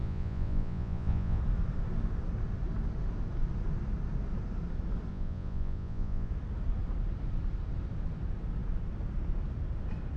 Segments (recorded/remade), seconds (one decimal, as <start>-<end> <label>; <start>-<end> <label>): 0.0-1.4 remade; 1.4-5.1 recorded; 5.1-6.3 remade; 6.3-10.2 recorded